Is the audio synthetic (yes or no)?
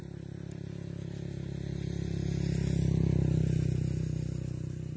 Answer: no